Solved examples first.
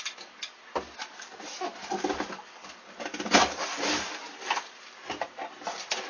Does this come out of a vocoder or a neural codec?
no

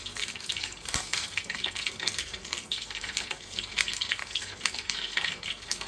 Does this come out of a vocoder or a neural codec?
yes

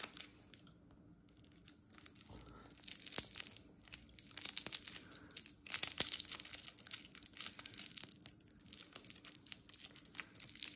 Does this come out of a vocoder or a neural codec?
no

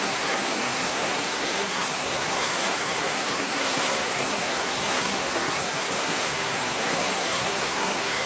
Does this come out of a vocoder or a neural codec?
yes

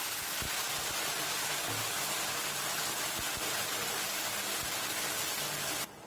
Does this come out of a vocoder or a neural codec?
no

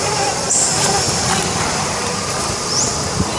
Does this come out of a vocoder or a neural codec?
no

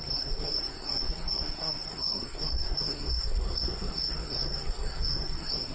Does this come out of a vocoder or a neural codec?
yes